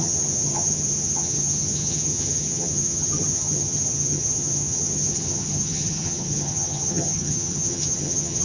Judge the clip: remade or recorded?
remade